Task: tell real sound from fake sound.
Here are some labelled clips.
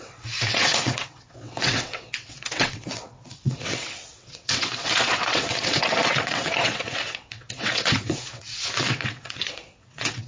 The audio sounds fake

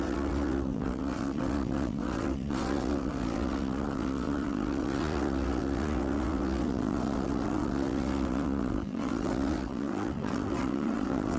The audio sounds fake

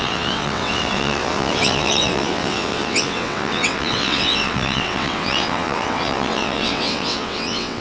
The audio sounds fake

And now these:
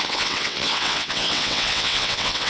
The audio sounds fake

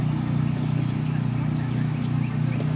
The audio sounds real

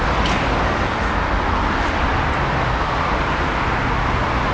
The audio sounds real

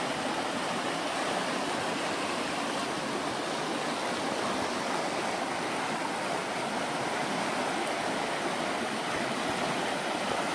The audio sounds real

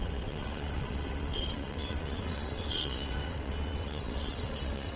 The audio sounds fake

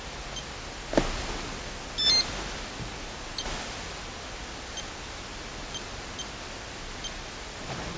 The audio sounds real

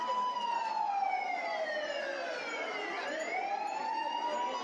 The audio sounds real